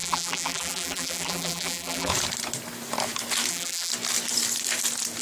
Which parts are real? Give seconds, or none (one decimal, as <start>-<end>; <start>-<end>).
2.1-3.5; 3.9-5.2